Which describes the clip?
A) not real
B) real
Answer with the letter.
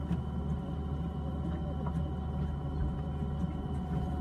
B